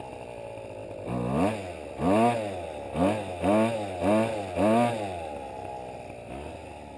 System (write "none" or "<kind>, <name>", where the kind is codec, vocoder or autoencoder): none